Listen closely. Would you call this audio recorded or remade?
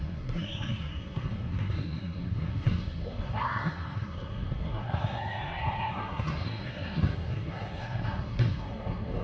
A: remade